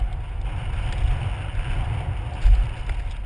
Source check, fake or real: real